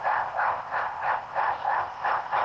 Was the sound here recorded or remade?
remade